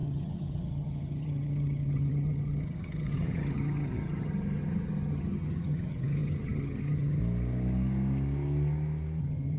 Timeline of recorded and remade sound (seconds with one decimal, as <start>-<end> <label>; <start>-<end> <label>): 0.0-7.2 remade; 7.2-9.2 recorded; 9.2-9.6 remade